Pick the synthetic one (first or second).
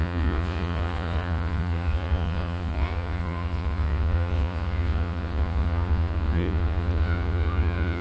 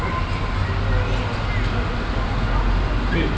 first